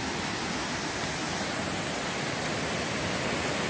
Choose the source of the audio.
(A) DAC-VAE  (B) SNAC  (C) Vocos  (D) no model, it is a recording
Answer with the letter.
D